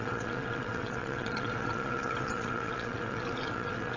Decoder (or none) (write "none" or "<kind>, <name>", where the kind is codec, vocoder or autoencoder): vocoder, WaveNeXt